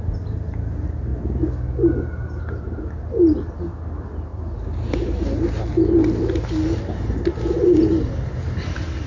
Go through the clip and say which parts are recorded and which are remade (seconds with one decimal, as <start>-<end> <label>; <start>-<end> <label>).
0.0-9.1 recorded